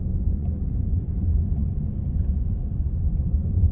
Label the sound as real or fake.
fake